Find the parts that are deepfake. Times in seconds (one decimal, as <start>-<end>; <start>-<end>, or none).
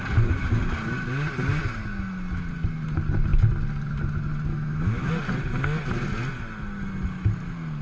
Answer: 4.5-5.1